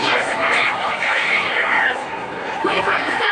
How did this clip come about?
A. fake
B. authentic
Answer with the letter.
A